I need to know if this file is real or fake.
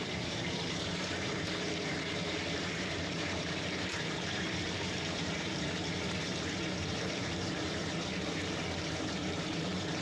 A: fake